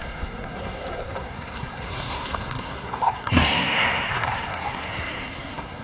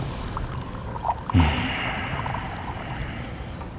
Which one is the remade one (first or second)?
first